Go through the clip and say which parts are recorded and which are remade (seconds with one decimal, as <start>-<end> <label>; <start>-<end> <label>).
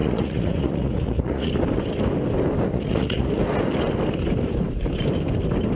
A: 0.0-1.5 remade; 1.5-2.7 recorded; 2.7-3.4 remade; 3.4-5.8 recorded